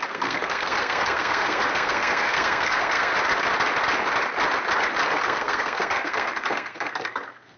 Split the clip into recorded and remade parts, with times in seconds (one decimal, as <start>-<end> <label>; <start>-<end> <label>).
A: 0.0-3.1 remade; 3.1-5.2 recorded; 5.2-7.6 remade